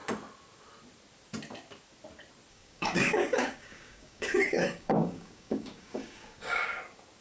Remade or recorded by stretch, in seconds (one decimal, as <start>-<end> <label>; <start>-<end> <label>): 0.0-2.5 recorded; 2.5-6.8 remade; 6.8-7.2 recorded

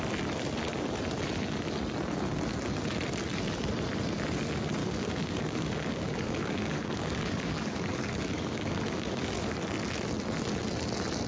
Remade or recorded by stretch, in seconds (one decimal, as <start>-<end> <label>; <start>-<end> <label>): 0.0-4.8 recorded; 4.8-9.5 remade; 9.5-11.3 recorded

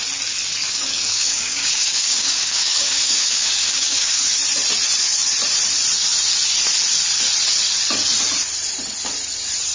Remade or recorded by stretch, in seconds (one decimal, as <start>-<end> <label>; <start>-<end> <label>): 0.0-0.6 recorded; 0.6-4.2 remade; 4.2-9.7 recorded

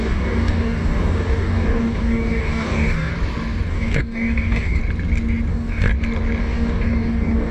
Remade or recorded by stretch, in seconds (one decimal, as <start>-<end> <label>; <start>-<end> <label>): 0.0-3.1 remade; 3.1-3.7 recorded; 3.7-4.8 remade; 4.8-5.5 recorded; 5.5-5.9 remade; 5.9-6.4 recorded; 6.4-7.5 remade

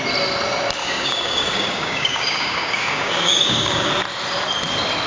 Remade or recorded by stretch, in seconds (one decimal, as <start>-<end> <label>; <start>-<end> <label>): 0.0-0.8 recorded; 0.8-3.9 remade; 3.9-5.1 recorded

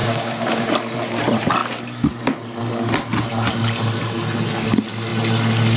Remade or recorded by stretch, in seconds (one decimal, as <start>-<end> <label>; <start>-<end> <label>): 0.0-0.7 remade; 0.7-5.8 recorded

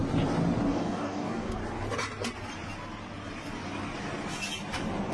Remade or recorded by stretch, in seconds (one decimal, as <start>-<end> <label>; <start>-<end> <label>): 0.0-0.7 recorded; 0.7-1.6 remade; 1.6-5.1 recorded

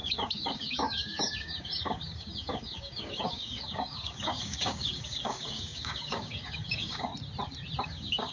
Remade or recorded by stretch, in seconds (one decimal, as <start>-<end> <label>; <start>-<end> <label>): 0.0-7.1 remade; 7.1-7.8 recorded; 7.8-8.3 remade